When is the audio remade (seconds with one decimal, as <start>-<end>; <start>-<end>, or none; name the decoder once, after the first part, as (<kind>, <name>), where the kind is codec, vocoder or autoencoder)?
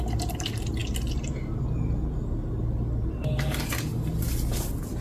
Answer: none